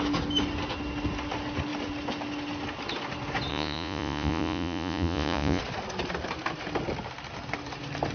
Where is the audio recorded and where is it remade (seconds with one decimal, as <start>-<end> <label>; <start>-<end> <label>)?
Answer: 0.0-3.5 recorded; 3.5-5.6 remade; 5.6-8.1 recorded